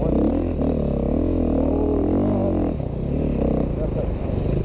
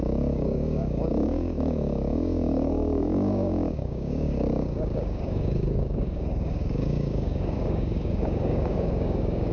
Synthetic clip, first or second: second